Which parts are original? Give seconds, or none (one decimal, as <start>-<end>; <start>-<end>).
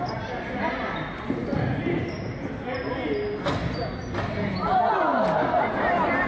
0.0-6.3